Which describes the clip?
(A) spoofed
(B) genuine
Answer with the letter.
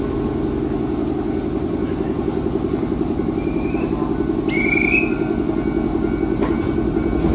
B